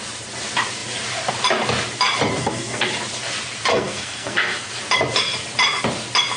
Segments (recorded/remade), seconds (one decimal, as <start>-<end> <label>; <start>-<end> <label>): 0.0-2.4 recorded; 2.4-2.9 remade; 2.9-3.7 recorded; 3.7-4.7 remade; 4.7-6.4 recorded